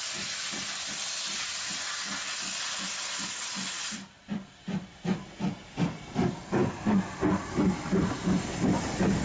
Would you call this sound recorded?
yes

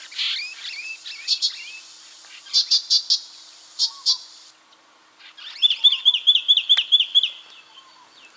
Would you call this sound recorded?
yes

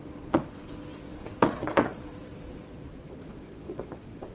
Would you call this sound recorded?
no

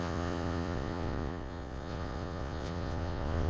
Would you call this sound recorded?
no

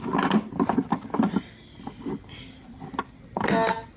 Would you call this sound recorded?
yes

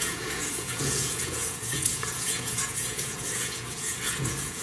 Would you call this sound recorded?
no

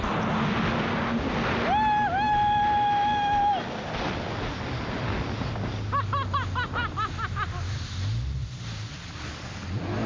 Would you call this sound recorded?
yes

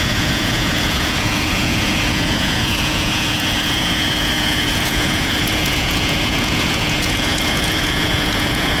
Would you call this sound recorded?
no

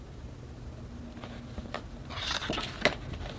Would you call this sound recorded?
yes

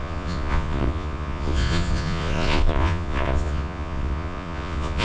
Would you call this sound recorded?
no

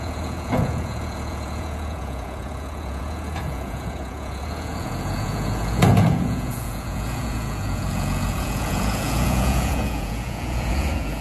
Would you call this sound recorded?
no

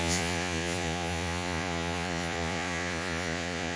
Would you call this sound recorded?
no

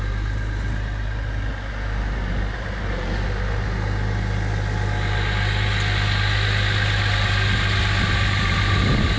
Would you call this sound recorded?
yes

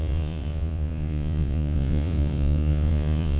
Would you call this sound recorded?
no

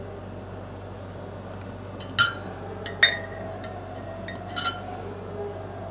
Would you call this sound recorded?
yes